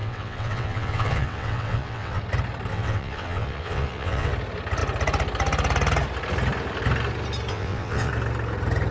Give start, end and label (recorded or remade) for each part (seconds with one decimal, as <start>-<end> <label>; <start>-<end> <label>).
0.0-2.2 remade; 2.2-2.7 recorded; 2.7-4.3 remade; 4.3-7.5 recorded; 7.5-8.1 remade; 8.1-8.9 recorded